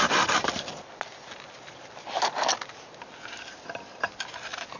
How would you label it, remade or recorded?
recorded